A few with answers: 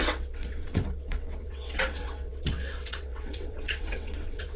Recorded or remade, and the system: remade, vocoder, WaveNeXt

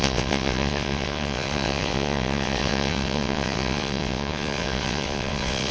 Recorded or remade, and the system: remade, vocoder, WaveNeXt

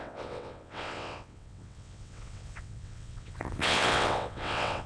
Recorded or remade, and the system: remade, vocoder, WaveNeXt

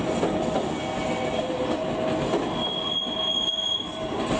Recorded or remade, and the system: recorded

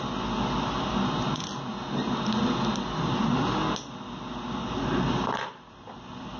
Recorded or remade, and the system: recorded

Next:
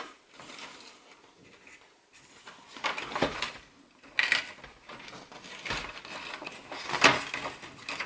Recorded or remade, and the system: recorded